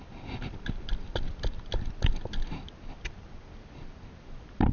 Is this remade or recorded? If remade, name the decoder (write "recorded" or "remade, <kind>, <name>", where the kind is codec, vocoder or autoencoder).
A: recorded